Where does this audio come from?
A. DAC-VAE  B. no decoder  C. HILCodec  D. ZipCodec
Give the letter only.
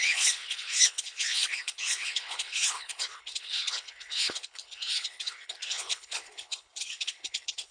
C